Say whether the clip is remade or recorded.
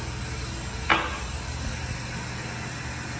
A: recorded